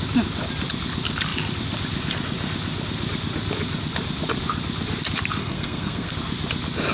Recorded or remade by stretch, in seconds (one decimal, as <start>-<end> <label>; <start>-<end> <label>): 0.0-5.4 recorded; 5.4-6.1 remade; 6.1-6.9 recorded